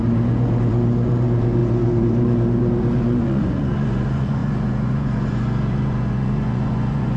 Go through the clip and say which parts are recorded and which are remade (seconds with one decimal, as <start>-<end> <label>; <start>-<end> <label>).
0.0-7.2 remade